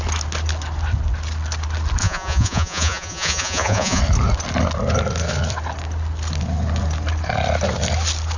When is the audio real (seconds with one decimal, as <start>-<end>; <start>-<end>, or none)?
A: 0.0-2.0; 4.0-8.4